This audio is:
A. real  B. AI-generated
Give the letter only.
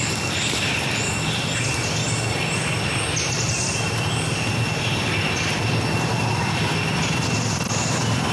A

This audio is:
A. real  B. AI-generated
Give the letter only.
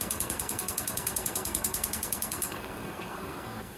B